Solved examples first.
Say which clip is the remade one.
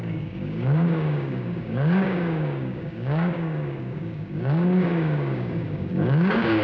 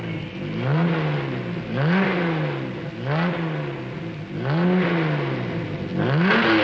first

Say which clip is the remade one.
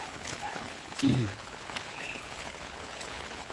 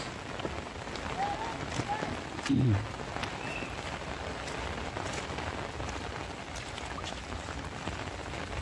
first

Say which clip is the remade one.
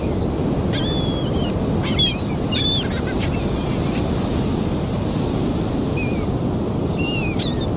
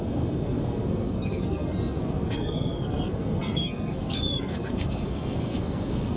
second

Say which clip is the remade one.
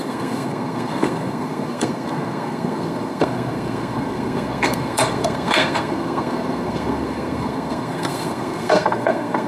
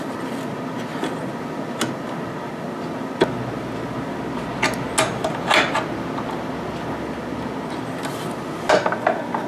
first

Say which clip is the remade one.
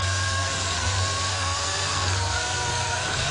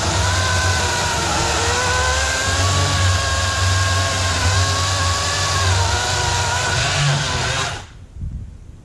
first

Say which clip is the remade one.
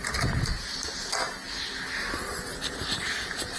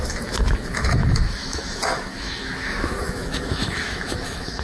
second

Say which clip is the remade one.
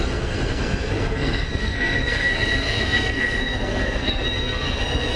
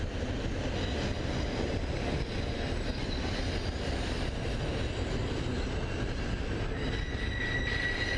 first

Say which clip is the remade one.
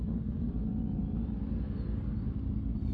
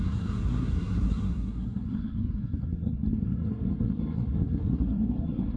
second